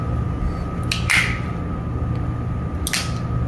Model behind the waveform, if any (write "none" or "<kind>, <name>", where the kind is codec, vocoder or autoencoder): none